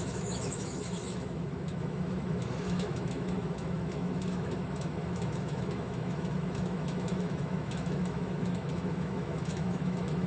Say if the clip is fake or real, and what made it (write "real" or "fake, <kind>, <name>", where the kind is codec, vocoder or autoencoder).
fake, autoencoder, DAC-VAE